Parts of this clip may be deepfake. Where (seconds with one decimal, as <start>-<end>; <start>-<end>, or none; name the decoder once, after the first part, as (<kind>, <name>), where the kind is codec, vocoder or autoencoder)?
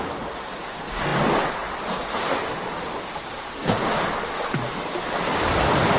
none